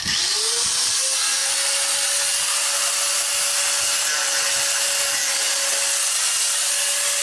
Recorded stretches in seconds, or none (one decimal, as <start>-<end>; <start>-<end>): 0.0-7.2